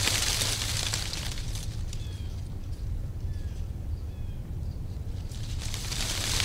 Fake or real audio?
fake